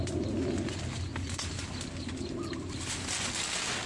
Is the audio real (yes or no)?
yes